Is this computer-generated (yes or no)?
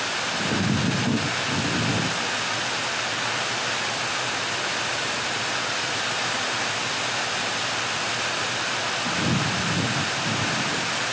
no